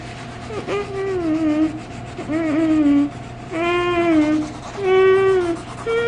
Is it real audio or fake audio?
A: real